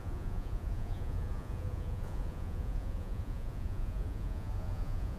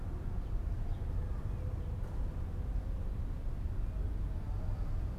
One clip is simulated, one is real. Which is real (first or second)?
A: second